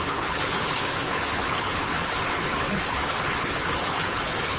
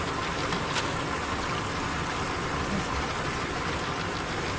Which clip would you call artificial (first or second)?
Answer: first